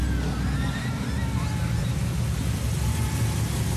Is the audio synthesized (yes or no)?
no